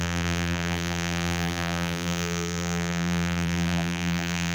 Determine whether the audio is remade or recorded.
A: remade